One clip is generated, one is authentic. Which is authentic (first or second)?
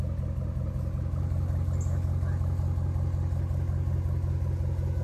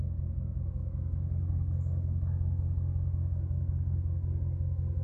first